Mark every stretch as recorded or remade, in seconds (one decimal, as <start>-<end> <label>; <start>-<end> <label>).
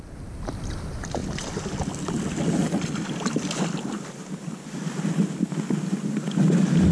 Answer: 0.0-6.9 recorded